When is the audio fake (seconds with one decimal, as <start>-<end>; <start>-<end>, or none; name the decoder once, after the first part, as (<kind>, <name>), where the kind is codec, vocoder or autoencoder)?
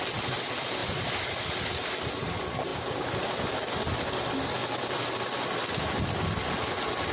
0.8-2.3 (vocoder, BigVGAN v2)